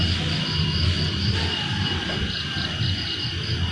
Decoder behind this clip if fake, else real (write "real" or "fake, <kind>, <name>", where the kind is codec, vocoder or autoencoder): real